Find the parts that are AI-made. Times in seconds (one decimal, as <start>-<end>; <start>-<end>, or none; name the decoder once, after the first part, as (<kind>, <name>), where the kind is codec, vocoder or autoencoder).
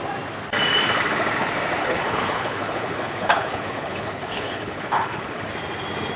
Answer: 1.8-5.5 (codec, HILCodec)